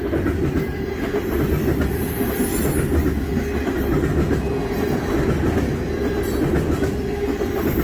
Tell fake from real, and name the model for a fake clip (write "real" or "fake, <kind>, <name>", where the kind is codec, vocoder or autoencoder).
real